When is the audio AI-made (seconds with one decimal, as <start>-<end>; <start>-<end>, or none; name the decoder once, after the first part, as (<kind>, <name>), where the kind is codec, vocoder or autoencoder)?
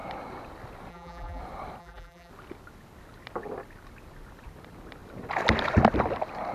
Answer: 0.9-1.4 (vocoder, BigVGAN v2); 1.8-2.3